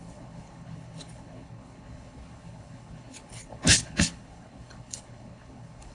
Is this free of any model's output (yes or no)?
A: no